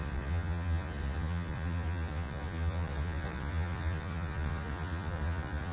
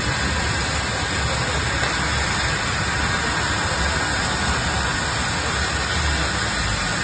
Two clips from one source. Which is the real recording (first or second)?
second